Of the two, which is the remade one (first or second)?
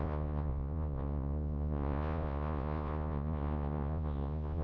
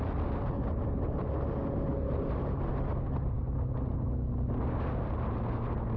first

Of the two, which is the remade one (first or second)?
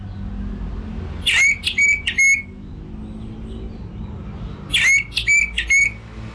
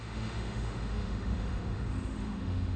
second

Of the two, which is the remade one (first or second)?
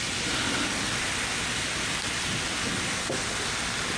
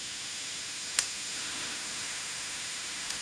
second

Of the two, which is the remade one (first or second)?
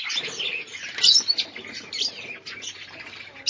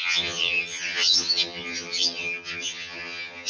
second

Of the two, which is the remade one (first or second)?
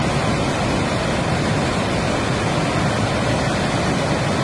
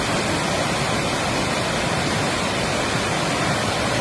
second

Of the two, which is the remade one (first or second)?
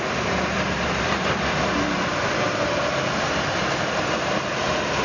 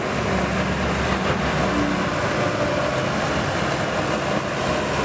first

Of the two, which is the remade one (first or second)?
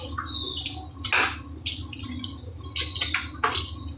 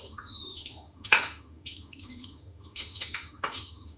second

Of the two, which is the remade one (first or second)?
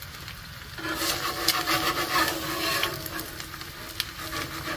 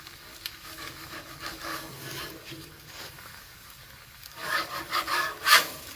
second